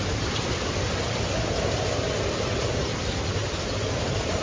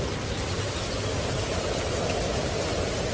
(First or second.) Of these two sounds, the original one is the second